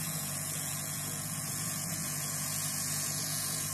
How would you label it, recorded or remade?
remade